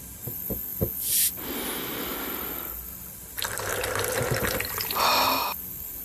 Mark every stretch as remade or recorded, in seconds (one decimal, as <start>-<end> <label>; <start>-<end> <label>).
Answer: 0.0-6.0 recorded